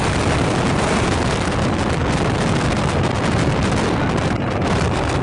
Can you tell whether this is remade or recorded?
remade